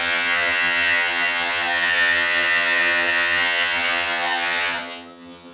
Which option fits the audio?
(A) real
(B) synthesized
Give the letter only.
B